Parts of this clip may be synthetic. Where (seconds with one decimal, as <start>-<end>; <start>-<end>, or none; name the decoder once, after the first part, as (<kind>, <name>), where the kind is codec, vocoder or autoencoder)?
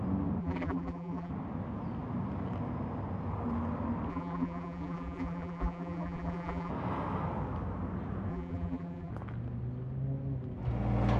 0.4-1.3 (vocoder, BigVGAN v2); 4.1-6.7; 8.3-9.1